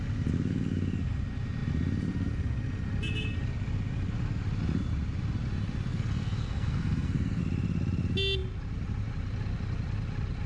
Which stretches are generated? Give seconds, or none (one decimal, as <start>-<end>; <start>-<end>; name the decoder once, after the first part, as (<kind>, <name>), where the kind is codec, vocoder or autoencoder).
5.9-7.4 (codec, SNAC)